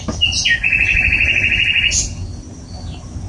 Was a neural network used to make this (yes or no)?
no